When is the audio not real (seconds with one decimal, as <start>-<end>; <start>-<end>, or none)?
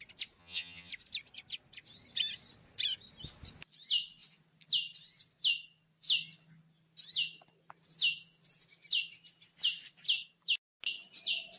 0.4-0.9